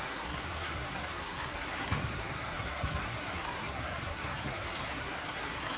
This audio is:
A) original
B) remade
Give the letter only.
B